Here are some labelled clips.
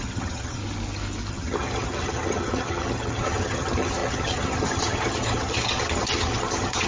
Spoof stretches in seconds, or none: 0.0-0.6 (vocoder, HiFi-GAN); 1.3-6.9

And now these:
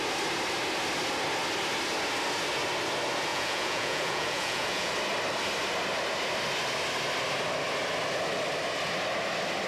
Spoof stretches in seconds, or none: 3.3-4.9 (vocoder, Vocos)

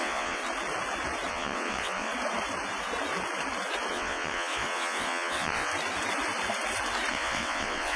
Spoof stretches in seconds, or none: 0.0-0.4 (vocoder, WaveNeXt); 1.3-2.1; 3.9-5.7; 7.1-8.0

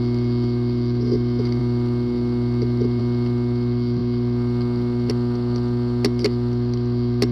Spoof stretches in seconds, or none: none

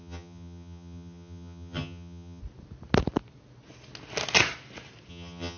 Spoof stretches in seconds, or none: 0.0-2.4 (vocoder, HiFi-GAN); 5.1-5.6

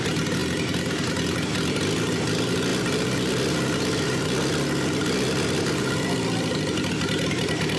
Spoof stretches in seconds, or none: none

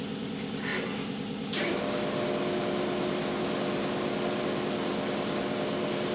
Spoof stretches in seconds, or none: none

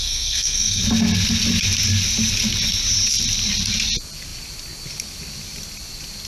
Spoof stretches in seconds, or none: 0.0-0.8 (codec, SNAC)